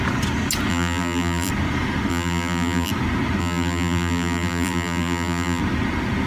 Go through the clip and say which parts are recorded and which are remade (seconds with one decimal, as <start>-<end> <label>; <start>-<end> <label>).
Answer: 0.0-0.7 recorded; 0.7-1.5 remade; 1.5-2.1 recorded; 2.1-2.9 remade; 2.9-3.4 recorded; 3.4-5.6 remade; 5.6-6.3 recorded